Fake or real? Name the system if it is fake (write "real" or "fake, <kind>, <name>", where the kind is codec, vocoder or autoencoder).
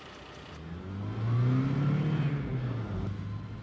real